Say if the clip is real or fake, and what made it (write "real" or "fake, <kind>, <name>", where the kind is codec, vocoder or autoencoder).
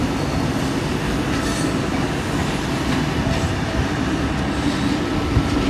real